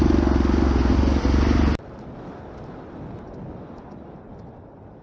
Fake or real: real